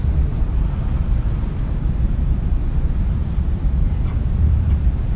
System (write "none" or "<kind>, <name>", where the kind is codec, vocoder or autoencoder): vocoder, BigVGAN v2